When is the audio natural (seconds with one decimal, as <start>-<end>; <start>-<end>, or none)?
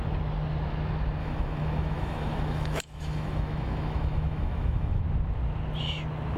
0.0-1.2; 5.0-6.4